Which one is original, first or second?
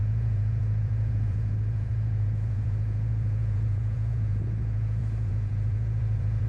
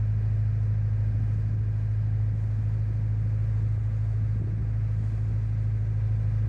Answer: second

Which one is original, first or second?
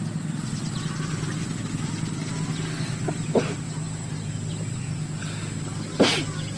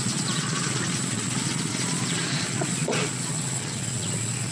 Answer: first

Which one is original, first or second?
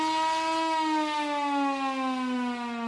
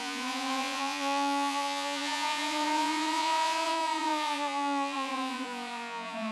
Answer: first